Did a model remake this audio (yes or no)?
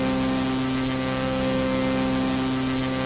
no